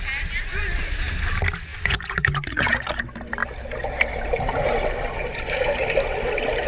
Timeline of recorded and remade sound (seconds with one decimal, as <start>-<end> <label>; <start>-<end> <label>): 0.0-1.7 recorded; 1.7-3.0 remade; 3.0-6.7 recorded